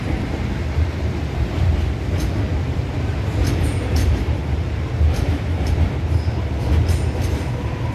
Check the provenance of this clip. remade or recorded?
remade